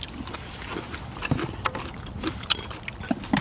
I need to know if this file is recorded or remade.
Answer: recorded